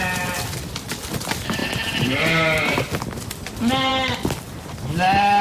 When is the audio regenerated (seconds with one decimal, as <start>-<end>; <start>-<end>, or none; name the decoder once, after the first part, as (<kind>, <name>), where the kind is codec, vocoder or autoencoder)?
none